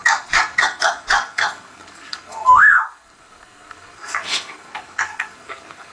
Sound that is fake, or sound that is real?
fake